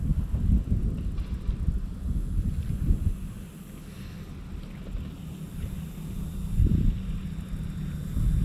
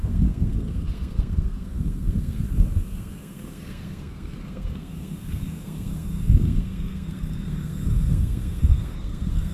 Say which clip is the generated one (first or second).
second